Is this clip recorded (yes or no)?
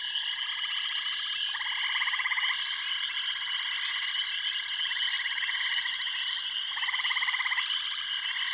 yes